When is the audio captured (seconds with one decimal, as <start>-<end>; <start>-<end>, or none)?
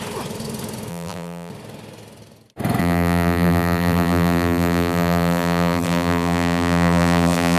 0.0-0.9; 1.5-2.8